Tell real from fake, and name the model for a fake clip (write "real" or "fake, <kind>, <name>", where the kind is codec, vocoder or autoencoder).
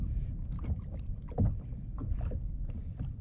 real